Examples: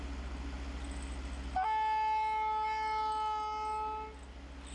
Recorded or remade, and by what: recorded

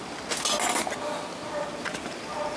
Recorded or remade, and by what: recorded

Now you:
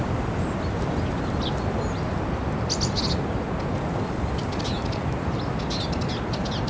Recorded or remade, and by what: recorded